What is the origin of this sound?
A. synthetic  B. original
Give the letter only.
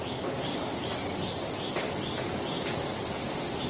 B